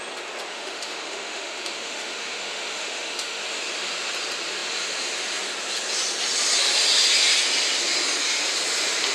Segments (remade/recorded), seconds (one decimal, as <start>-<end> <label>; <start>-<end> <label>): 0.0-0.5 recorded; 0.5-3.4 remade; 3.4-9.1 recorded